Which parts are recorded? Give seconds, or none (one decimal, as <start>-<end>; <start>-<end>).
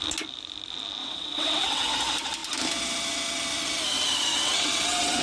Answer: 0.0-1.0; 1.9-4.3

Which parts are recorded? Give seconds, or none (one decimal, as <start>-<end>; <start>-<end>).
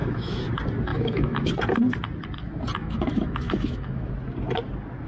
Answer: 0.5-0.9; 1.5-2.8; 4.1-5.1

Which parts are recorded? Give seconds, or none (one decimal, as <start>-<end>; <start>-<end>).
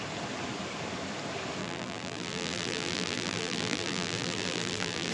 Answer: 0.0-1.6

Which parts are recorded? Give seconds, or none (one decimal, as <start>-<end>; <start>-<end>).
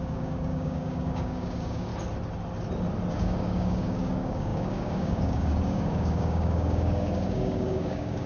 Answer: 1.9-3.1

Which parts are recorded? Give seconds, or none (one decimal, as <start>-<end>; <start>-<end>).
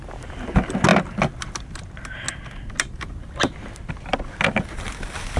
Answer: 0.0-5.4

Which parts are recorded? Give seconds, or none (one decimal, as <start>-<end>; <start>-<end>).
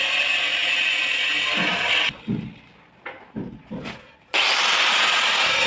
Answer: 0.0-5.7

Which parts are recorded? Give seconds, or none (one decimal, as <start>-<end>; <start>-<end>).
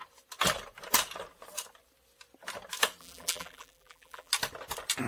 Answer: 0.0-3.0; 4.3-5.1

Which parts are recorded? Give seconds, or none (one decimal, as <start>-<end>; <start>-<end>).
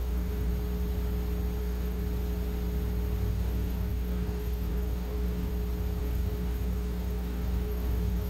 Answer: 0.5-1.6; 2.0-3.3; 5.5-6.0